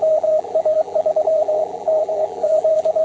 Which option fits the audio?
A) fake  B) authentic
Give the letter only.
A